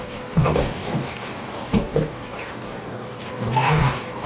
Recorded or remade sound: remade